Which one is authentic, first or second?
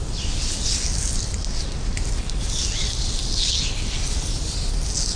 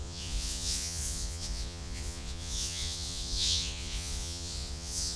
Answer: first